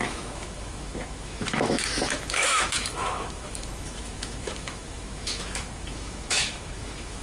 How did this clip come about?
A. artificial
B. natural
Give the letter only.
A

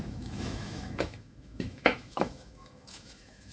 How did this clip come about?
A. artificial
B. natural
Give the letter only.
A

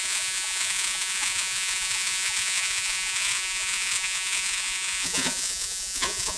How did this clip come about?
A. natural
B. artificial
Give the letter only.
B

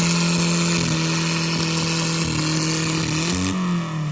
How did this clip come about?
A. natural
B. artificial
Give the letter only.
A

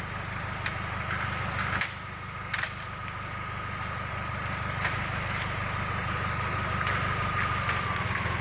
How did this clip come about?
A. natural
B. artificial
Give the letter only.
A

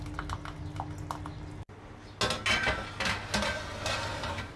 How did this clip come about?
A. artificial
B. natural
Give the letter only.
B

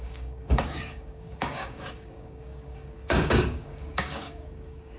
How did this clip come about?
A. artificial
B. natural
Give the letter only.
A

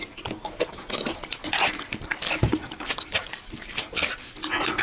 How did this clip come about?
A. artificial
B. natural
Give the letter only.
B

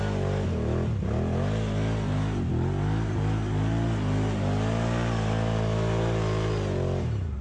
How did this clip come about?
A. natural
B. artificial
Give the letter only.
A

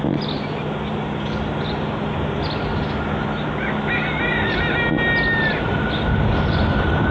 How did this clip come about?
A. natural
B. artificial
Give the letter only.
A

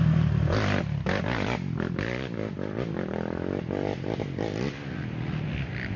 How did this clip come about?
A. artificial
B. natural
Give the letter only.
B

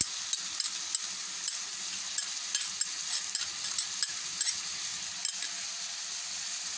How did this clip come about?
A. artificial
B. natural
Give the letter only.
B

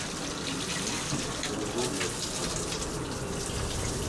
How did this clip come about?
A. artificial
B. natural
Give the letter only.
B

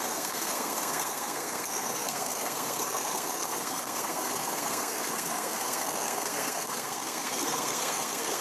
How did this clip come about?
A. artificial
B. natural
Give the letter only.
A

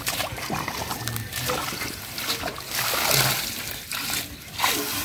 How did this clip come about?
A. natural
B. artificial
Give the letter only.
A